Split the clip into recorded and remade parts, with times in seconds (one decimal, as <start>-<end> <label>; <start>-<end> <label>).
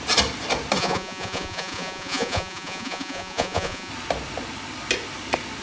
0.0-0.8 recorded; 0.8-3.9 remade; 3.9-5.6 recorded